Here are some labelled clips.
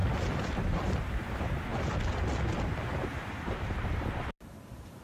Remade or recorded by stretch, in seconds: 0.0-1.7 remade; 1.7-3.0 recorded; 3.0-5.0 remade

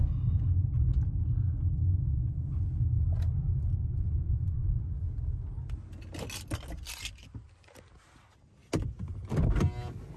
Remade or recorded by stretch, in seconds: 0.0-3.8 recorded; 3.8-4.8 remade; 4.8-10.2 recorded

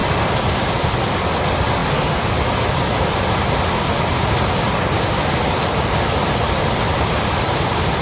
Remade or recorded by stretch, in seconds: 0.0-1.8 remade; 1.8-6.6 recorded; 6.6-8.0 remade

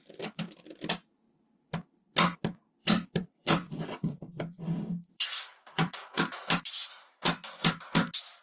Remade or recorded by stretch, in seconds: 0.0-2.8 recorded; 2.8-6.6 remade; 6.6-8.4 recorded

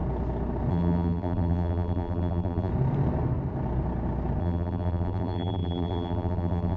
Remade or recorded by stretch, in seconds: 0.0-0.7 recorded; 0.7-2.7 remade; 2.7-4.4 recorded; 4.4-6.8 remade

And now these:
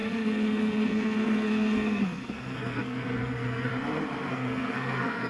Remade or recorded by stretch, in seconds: 0.0-3.7 remade; 3.7-4.3 recorded; 4.3-5.3 remade

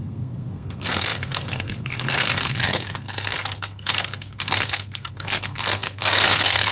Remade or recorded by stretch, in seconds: 0.0-6.7 remade

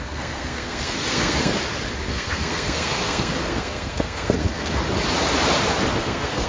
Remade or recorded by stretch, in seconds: 0.0-1.5 remade; 1.5-2.1 recorded; 2.1-4.8 remade; 4.8-6.0 recorded; 6.0-6.5 remade